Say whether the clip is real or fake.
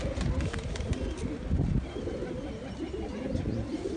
real